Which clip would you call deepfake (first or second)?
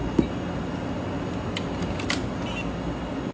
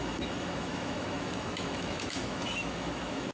second